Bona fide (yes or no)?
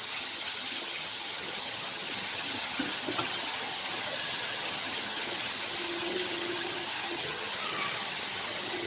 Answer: no